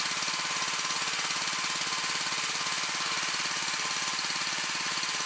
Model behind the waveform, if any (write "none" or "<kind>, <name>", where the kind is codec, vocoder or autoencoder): none